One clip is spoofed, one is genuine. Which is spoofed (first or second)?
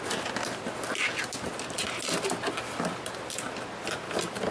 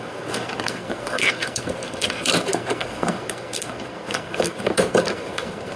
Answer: second